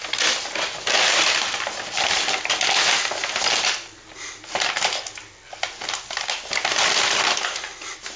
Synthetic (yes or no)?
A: no